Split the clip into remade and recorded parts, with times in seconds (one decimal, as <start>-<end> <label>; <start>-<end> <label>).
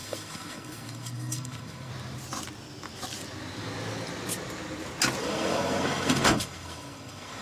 0.0-1.9 remade; 1.9-5.2 recorded; 5.2-7.4 remade